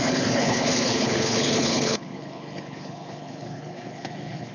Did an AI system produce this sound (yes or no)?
yes